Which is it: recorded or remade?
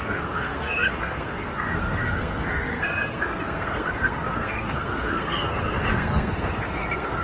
remade